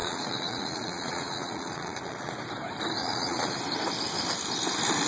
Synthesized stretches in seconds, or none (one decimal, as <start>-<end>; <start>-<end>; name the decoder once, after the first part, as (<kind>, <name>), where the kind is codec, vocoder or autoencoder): 0.0-2.3 (vocoder, Vocos); 3.0-3.6